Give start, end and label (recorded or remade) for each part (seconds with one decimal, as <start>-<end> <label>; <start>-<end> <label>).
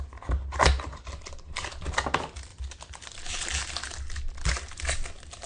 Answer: 0.0-5.5 recorded